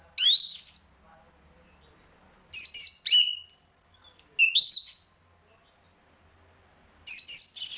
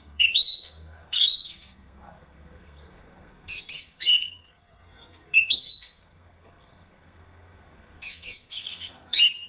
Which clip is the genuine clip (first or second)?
first